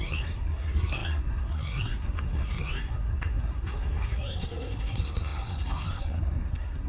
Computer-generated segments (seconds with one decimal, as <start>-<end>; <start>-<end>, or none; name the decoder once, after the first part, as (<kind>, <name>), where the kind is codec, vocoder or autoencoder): 0.0-6.9 (codec, SNAC)